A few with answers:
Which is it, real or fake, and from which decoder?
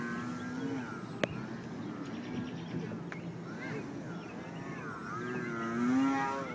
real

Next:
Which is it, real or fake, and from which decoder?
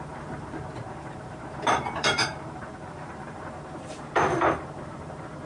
fake, vocoder, BigVGAN v2